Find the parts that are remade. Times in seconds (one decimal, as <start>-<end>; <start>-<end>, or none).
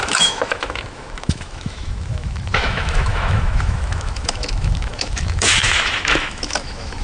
0.0-7.0